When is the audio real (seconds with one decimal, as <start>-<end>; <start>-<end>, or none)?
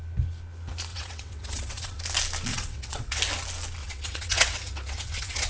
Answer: 0.0-0.9; 2.0-2.5; 3.2-3.8